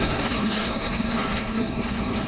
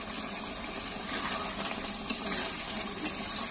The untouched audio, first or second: second